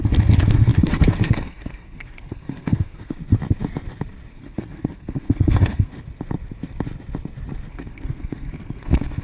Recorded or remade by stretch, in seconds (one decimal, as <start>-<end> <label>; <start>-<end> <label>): 0.0-3.2 remade; 3.2-4.3 recorded; 4.3-5.9 remade; 5.9-7.7 recorded; 7.7-9.2 remade

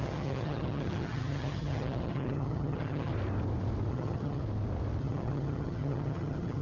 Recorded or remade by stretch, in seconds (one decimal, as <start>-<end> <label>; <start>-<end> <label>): 0.0-3.1 remade; 3.1-3.9 recorded; 3.9-4.4 remade; 4.4-5.0 recorded; 5.0-6.6 remade

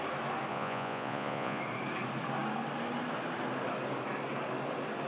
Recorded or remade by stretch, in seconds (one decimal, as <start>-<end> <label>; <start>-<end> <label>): 0.0-0.5 recorded; 0.5-1.6 remade; 1.6-5.1 recorded

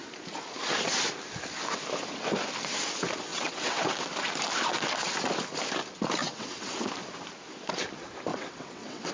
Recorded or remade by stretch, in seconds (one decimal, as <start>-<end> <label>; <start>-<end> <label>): 0.0-3.3 recorded; 3.3-3.9 remade; 3.9-6.2 recorded; 6.2-6.9 remade; 6.9-8.3 recorded; 8.3-9.1 remade

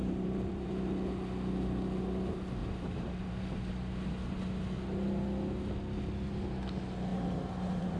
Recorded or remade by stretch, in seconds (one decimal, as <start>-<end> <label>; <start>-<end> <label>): 0.0-0.7 remade; 0.7-2.6 recorded; 2.6-3.6 remade; 3.6-7.1 recorded; 7.1-8.0 remade

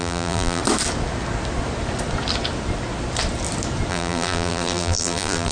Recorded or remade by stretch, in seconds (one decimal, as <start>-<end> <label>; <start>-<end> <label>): 0.0-0.6 remade; 0.6-3.9 recorded; 3.9-5.5 remade

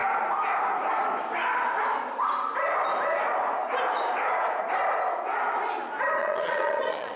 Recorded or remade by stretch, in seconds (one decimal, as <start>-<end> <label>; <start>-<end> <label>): 0.0-6.2 recorded; 6.2-7.2 remade